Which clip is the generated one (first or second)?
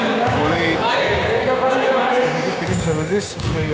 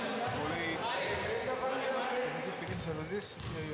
first